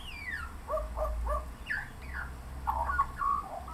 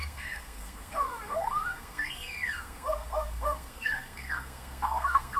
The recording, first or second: first